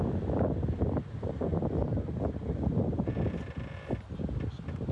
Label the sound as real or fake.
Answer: real